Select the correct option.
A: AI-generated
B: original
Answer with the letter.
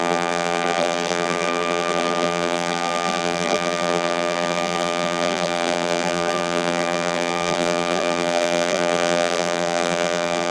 A